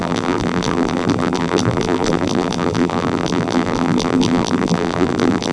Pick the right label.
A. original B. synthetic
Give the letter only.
B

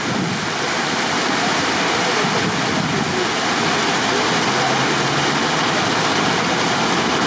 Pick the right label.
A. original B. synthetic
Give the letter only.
A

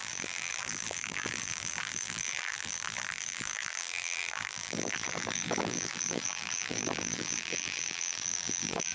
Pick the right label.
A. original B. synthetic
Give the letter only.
B